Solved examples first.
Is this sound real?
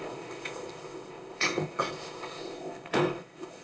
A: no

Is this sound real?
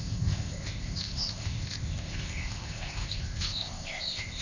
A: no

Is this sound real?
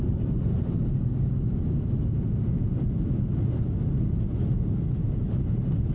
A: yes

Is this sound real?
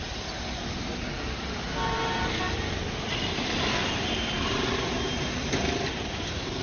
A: yes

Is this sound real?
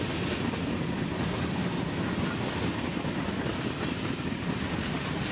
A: yes